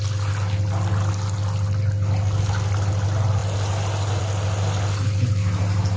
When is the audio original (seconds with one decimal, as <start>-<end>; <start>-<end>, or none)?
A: 0.0-6.0